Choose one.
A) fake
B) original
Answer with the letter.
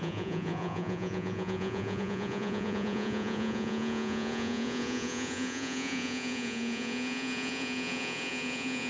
A